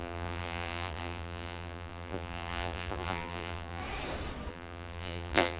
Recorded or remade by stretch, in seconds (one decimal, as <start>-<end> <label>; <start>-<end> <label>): 0.0-3.8 remade; 3.8-4.5 recorded; 4.5-5.6 remade